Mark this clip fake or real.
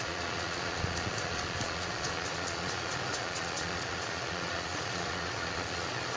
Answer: fake